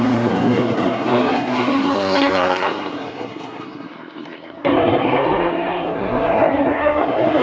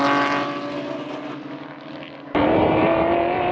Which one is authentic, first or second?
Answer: second